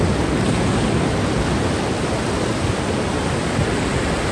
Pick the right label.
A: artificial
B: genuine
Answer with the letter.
B